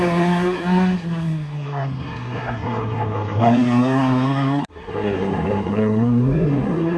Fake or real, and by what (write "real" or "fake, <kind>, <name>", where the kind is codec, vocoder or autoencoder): fake, codec, SNAC